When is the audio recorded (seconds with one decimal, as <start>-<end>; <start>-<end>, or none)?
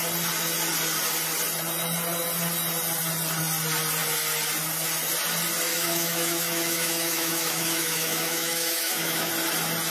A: 0.0-5.7; 9.3-9.9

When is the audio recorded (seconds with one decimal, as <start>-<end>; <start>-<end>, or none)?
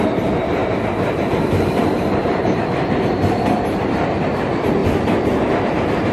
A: 0.6-1.2; 4.8-5.5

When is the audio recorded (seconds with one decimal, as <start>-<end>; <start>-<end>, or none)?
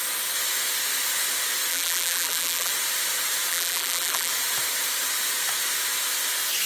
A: 0.0-1.7; 2.7-3.5; 4.3-6.7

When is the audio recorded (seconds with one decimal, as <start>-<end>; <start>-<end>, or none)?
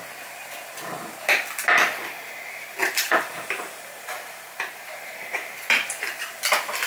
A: 0.0-2.8; 6.4-6.9